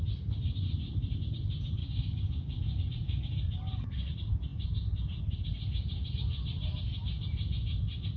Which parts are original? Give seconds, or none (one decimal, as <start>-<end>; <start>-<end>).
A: 0.0-1.8; 2.6-8.2